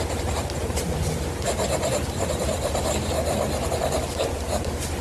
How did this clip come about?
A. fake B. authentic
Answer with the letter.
B